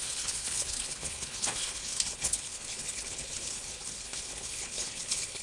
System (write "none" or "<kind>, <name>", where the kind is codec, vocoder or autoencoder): codec, HILCodec